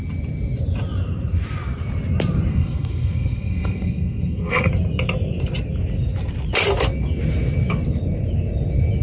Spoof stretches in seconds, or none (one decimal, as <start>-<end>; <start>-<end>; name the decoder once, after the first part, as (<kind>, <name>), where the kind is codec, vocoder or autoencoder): 2.5-4.7 (codec, SNAC)